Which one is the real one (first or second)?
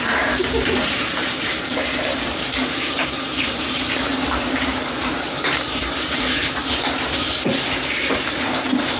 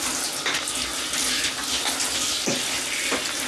second